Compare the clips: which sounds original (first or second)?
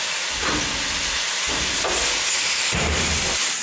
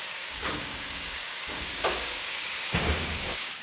first